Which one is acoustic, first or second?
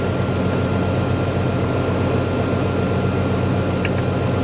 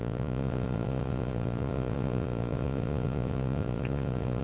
first